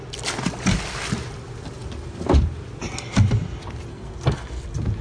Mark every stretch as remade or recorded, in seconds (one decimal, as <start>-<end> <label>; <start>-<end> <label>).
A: 0.0-3.9 recorded; 3.9-4.6 remade; 4.6-5.0 recorded